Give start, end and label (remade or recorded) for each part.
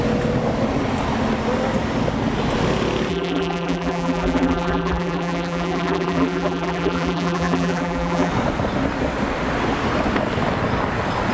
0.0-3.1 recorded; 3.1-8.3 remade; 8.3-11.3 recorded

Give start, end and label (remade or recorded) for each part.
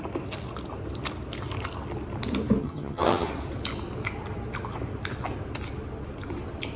0.0-2.6 recorded; 2.6-3.3 remade; 3.3-6.8 recorded